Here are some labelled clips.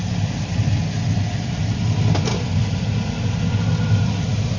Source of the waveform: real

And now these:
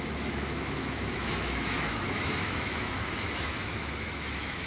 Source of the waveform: fake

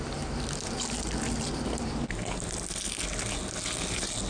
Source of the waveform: real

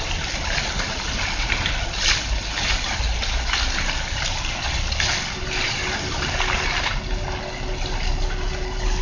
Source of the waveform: real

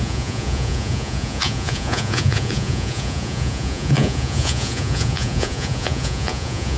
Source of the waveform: fake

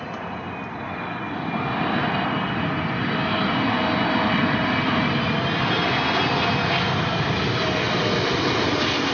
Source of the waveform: real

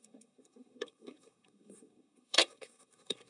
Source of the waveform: fake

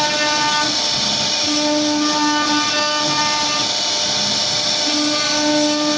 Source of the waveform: real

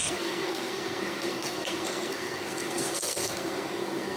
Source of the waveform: fake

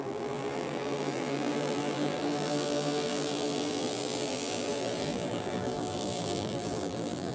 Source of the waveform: fake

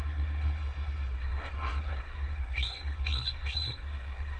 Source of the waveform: fake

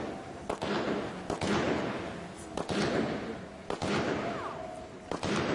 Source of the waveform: real